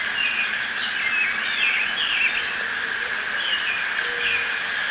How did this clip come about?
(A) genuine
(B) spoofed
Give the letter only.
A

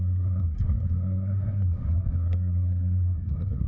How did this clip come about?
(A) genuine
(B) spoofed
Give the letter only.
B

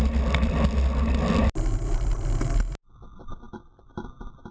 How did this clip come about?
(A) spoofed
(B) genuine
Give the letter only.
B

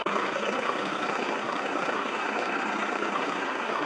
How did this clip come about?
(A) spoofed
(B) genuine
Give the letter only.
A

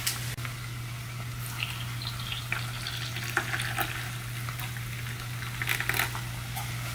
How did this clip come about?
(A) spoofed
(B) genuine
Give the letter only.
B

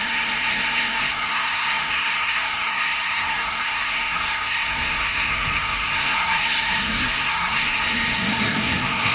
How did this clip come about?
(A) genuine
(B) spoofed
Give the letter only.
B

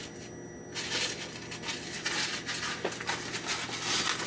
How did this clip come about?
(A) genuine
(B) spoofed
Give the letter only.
A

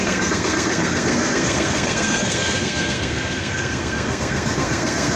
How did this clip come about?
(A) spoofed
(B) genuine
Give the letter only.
A